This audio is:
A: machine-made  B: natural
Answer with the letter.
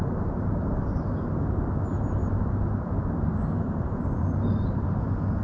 B